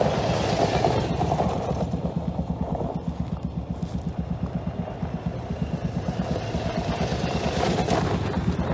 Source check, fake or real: real